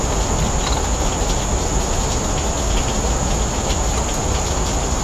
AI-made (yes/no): no